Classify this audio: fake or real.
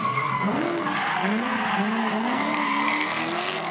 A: fake